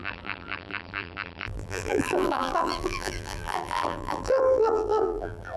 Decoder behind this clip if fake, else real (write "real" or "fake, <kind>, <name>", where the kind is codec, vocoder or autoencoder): fake, vocoder, BigVGAN v2